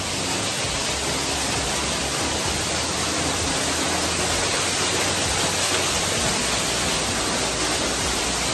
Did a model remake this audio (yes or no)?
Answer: no